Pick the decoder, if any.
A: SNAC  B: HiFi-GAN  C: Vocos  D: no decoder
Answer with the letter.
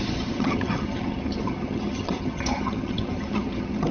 B